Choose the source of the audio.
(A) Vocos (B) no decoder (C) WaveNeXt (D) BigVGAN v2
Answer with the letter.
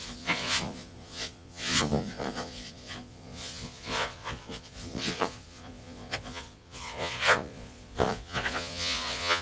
A